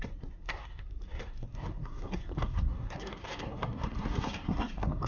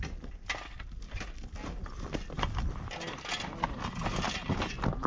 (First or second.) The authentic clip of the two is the second